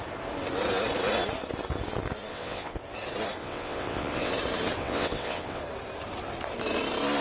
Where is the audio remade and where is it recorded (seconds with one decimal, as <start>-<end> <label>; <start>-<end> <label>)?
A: 0.0-2.3 recorded; 2.3-2.8 remade; 2.8-3.4 recorded; 3.4-4.3 remade; 4.3-4.8 recorded; 4.8-5.6 remade; 5.6-7.2 recorded